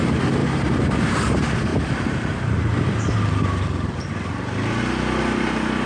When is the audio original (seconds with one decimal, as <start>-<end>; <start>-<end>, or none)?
0.0-0.4; 1.0-1.7; 4.1-5.9